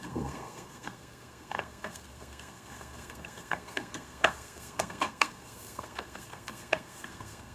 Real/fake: fake